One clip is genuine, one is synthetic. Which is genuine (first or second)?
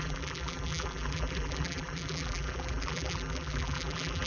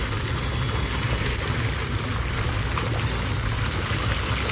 second